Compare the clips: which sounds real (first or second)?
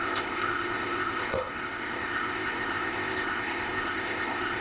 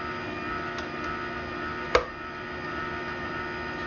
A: second